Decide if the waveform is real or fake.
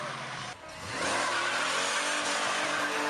real